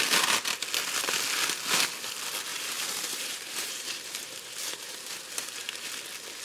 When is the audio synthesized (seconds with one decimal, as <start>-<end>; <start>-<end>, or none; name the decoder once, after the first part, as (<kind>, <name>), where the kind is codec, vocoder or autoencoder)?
2.5-5.9 (vocoder, BigVGAN v2)